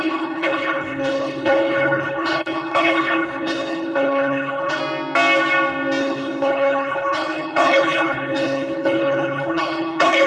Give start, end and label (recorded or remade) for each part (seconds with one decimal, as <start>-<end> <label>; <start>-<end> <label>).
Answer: 0.0-4.8 remade; 4.8-6.0 recorded; 6.0-10.3 remade